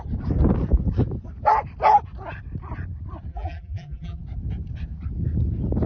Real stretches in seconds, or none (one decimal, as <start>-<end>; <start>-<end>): 0.0-3.3; 4.2-5.9